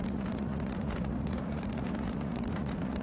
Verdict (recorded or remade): remade